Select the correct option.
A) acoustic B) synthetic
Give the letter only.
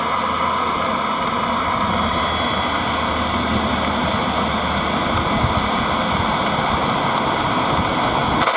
A